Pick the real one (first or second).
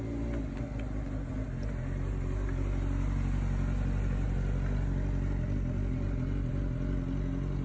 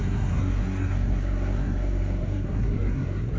first